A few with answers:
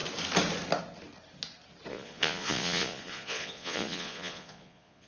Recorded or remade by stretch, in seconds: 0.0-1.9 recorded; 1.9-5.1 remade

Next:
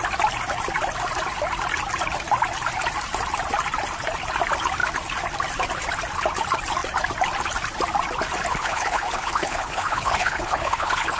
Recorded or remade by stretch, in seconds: 0.0-8.5 recorded; 8.5-11.2 remade

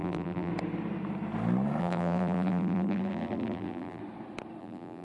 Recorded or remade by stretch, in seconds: 0.0-0.5 remade; 0.5-1.8 recorded; 1.8-4.0 remade; 4.0-4.6 recorded; 4.6-5.0 remade

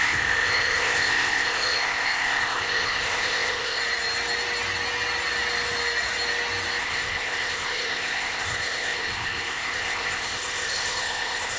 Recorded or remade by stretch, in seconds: 0.0-3.8 remade; 3.8-6.8 recorded; 6.8-11.6 remade

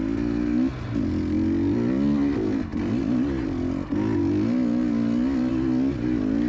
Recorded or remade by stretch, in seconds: 0.0-6.5 recorded

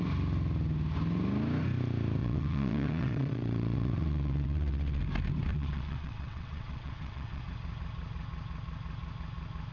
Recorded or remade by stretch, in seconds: 0.0-2.2 recorded; 2.2-5.0 remade; 5.0-5.5 recorded; 5.5-7.4 remade; 7.4-9.7 recorded